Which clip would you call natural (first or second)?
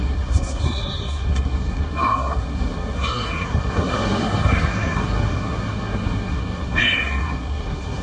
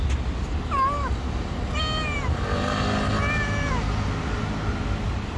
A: second